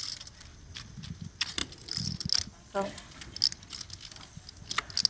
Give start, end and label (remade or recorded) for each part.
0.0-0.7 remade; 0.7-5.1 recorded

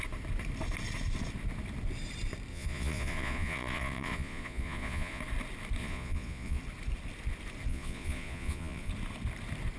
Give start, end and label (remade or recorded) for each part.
0.0-2.5 recorded; 2.5-5.2 remade; 5.2-5.8 recorded; 5.8-6.6 remade; 6.6-7.7 recorded; 7.7-8.9 remade; 8.9-9.8 recorded

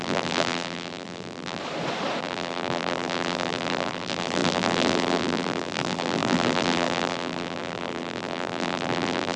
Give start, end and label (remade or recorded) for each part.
0.0-1.6 remade; 1.6-2.2 recorded; 2.2-9.4 remade